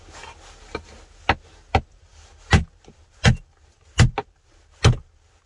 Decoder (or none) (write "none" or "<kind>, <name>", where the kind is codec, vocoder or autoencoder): none